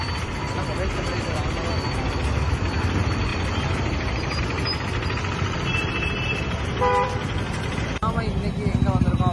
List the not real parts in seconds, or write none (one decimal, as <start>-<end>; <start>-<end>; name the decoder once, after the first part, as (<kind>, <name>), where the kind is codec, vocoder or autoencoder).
3.3-4.4 (vocoder, BigVGAN v2)